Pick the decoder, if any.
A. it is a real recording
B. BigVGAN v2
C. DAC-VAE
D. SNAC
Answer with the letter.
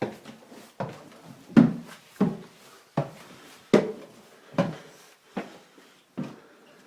A